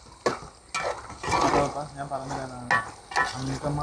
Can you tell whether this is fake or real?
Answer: real